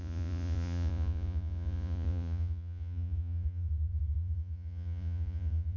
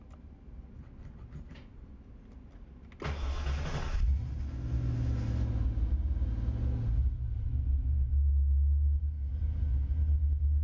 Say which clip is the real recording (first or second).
second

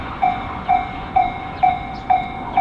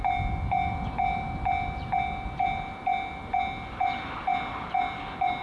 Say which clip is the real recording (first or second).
second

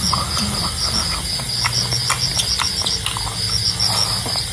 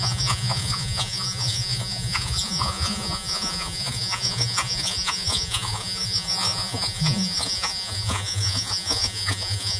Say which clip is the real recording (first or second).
first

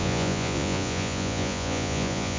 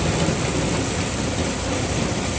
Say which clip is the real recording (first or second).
second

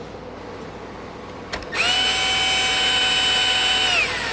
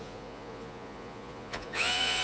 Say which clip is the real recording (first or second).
first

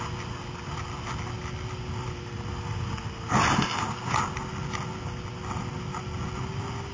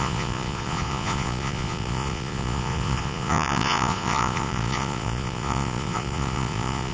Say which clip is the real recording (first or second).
first